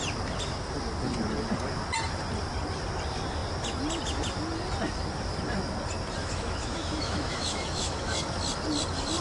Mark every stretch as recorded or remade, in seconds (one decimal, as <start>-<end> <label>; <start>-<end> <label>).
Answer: 0.0-6.2 recorded; 6.2-8.4 remade; 8.4-9.2 recorded